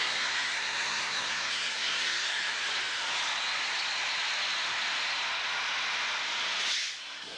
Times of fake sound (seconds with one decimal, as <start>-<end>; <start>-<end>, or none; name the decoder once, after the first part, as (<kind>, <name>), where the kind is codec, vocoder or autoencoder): 0.0-2.6 (codec, SNAC); 7.0-7.4